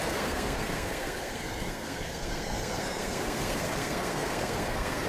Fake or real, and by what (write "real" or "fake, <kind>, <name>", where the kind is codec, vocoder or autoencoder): fake, codec, SNAC